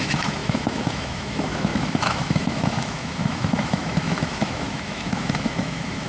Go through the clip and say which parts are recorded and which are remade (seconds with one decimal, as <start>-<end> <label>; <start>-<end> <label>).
0.0-6.1 remade